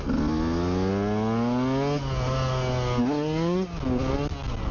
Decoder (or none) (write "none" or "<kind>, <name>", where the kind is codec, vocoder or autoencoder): none